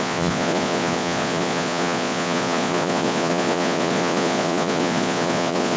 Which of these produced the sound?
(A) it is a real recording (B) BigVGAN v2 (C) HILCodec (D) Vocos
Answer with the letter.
D